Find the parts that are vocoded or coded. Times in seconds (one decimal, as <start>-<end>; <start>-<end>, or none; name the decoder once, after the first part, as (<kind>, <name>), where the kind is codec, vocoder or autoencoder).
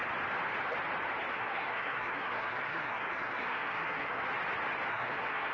1.3-4.2 (codec, SNAC); 4.9-5.5